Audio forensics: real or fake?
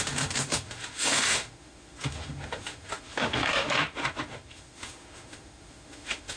fake